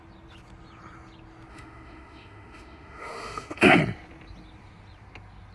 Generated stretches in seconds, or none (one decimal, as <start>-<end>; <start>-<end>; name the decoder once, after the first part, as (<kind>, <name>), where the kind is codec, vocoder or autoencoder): 1.5-3.8 (autoencoder, DAC-VAE)

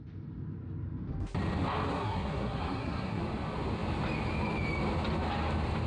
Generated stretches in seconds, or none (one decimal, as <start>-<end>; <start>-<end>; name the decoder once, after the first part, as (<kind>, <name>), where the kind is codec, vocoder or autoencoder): 1.9-3.2 (codec, SNAC)

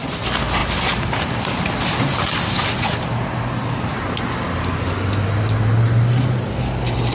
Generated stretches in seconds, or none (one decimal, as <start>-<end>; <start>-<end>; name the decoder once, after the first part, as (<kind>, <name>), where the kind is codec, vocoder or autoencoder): none

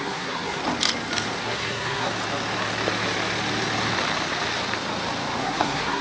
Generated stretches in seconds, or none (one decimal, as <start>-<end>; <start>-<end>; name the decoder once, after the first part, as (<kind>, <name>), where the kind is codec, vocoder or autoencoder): 0.0-0.6 (codec, SNAC); 1.4-2.1; 5.4-6.0

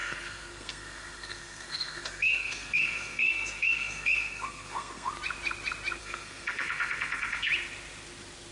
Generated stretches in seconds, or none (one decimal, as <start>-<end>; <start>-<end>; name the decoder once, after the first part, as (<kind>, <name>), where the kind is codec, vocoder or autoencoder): 0.0-5.1 (codec, SNAC); 6.0-7.5

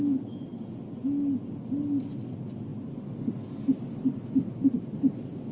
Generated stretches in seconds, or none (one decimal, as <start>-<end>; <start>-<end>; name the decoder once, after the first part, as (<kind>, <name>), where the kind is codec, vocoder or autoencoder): none

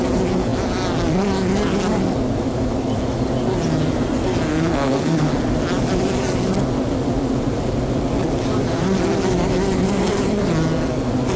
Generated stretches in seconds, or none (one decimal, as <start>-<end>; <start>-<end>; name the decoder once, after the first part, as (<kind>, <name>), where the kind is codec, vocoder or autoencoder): 4.5-5.3 (codec, SNAC)

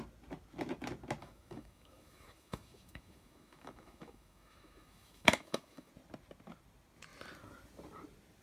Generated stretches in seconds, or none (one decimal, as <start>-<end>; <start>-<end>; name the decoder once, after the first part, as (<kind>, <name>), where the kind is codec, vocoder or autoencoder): 1.2-5.9 (autoencoder, DAC-VAE)